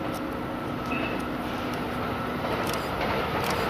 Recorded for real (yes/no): yes